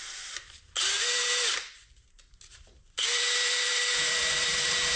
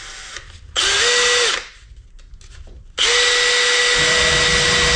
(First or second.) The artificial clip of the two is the first